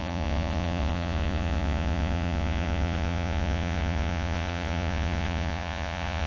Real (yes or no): no